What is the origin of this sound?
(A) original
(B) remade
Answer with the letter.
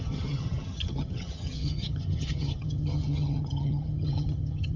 B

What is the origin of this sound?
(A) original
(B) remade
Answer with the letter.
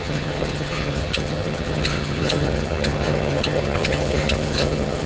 B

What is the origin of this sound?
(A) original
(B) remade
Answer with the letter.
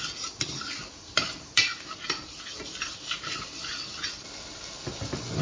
A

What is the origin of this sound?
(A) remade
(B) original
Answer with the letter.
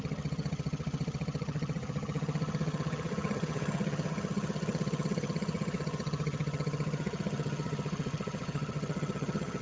A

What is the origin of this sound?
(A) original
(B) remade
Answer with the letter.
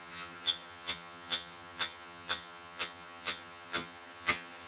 B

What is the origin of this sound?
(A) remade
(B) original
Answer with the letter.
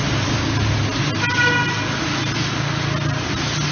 B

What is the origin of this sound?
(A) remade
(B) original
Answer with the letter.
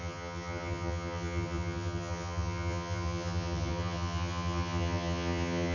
A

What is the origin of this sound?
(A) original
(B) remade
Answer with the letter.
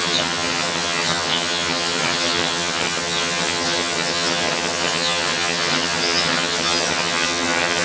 B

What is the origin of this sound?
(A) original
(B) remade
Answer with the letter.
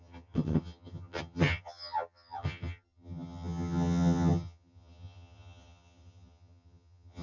B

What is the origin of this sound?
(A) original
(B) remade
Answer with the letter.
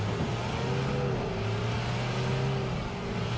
A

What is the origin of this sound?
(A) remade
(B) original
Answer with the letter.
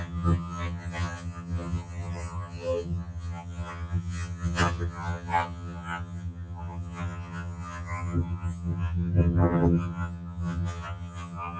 A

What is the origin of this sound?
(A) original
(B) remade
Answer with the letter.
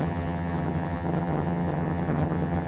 B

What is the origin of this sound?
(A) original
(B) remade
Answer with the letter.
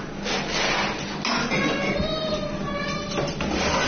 A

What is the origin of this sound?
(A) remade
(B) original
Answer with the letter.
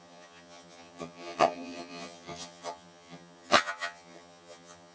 A